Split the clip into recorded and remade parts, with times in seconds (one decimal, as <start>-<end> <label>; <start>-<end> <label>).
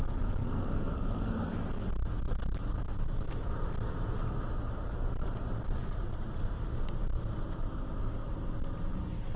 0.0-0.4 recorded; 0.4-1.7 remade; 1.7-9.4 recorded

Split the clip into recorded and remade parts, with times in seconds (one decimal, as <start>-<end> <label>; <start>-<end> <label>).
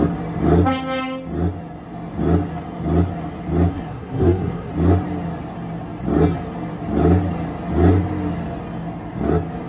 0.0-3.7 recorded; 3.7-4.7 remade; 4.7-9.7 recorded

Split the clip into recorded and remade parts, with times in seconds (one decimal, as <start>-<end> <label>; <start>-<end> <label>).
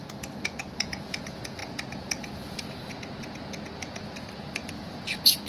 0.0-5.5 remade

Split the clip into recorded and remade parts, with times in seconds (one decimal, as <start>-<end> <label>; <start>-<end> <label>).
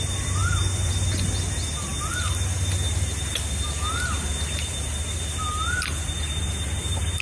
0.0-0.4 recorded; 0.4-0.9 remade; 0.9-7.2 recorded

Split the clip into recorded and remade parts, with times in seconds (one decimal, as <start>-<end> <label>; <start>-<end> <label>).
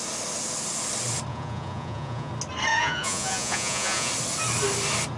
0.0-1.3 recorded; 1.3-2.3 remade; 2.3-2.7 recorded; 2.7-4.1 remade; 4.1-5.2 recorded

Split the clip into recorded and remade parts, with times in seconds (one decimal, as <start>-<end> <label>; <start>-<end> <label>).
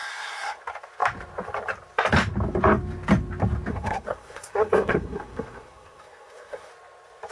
0.0-0.6 remade; 0.6-3.7 recorded; 3.7-6.7 remade; 6.7-7.3 recorded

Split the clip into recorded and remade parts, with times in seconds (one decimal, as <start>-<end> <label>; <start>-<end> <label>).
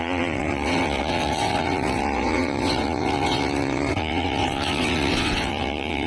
0.0-6.1 remade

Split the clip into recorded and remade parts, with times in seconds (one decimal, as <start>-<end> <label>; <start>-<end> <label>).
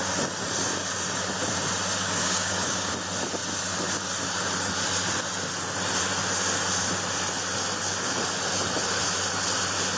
0.0-2.0 recorded; 2.0-2.9 remade; 2.9-10.0 recorded